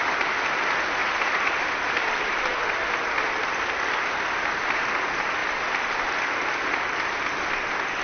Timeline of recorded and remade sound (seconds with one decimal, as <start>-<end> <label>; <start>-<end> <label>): 0.0-1.0 recorded; 1.0-3.9 remade; 3.9-5.4 recorded; 5.4-6.2 remade; 6.2-8.0 recorded